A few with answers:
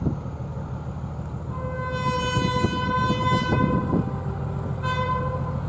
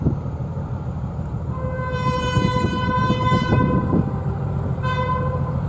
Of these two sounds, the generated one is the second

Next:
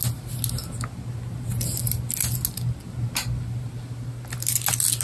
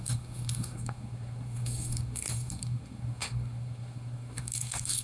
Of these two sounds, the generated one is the second